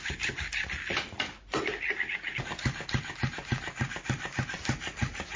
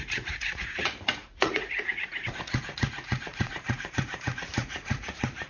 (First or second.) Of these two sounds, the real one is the first